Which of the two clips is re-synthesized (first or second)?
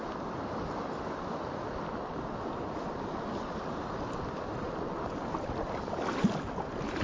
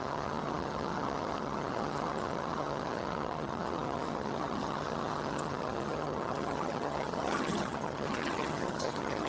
second